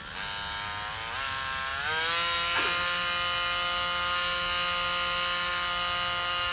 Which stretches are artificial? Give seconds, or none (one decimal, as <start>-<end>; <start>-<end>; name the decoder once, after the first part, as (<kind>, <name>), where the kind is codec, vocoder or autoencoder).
none